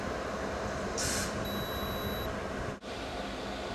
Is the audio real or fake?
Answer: real